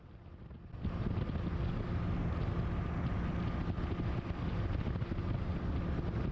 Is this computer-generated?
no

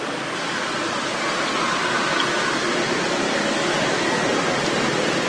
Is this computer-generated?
no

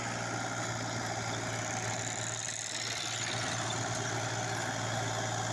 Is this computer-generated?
no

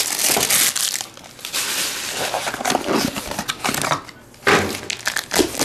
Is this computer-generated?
no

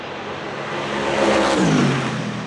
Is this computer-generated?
no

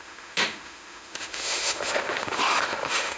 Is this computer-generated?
yes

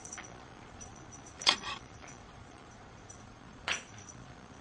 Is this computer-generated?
yes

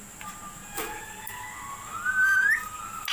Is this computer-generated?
no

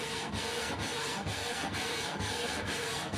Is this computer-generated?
yes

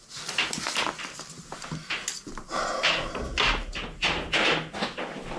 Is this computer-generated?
no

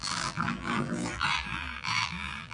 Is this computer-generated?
yes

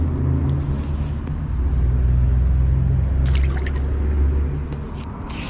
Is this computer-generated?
no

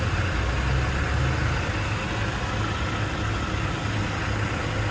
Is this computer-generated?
no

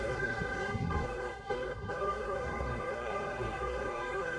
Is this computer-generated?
yes